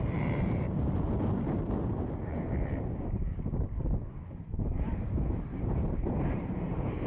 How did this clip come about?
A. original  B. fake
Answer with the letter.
B